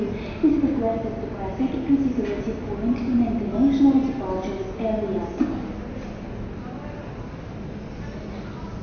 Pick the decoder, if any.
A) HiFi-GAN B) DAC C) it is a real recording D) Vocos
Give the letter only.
C